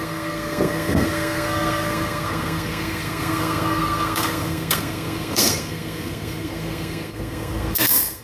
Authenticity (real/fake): fake